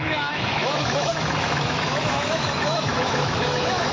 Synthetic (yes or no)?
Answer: yes